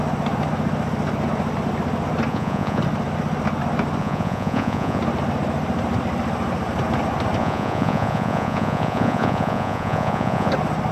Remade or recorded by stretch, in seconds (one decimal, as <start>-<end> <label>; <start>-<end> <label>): 0.0-2.3 recorded; 2.3-2.8 remade; 2.8-4.0 recorded; 4.0-5.0 remade; 5.0-7.4 recorded; 7.4-10.5 remade; 10.5-10.9 recorded